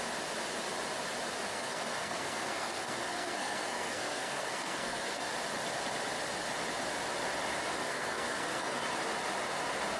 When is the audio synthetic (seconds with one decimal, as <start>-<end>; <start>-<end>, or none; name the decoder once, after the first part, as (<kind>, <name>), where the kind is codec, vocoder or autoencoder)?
1.5-5.3 (codec, SNAC); 7.8-8.8